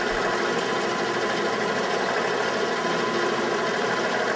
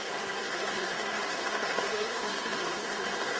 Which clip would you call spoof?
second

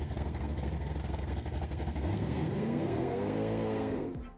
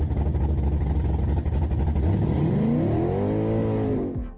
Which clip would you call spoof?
first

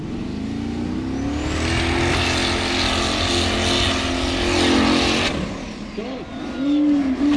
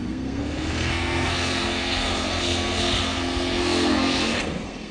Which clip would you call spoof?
second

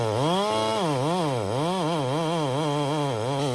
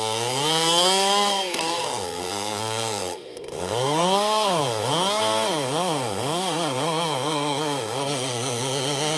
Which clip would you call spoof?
second